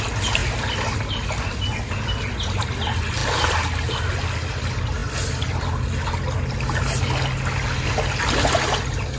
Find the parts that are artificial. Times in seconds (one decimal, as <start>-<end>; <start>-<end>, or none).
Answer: none